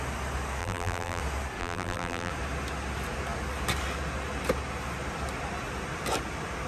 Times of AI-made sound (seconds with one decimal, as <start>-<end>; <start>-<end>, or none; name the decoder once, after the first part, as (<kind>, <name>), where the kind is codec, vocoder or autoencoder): 0.6-1.2 (vocoder, BigVGAN v2); 1.6-2.3